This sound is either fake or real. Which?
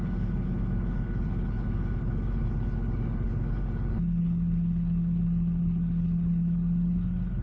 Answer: fake